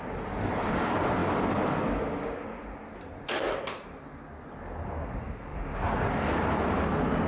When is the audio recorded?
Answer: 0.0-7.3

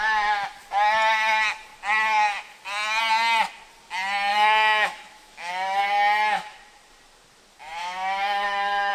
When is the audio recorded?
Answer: 0.0-4.3; 5.8-7.8